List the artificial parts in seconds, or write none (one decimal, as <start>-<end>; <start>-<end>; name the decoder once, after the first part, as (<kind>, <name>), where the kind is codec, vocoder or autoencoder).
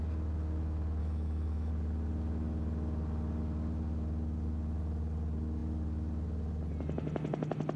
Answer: 1.0-1.7 (autoencoder, DAC-VAE)